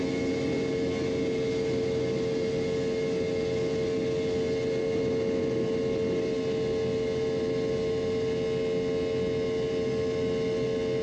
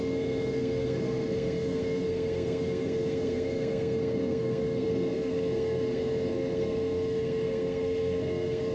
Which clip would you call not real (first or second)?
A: second